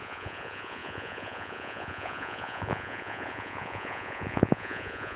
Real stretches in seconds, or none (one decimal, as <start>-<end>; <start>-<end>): none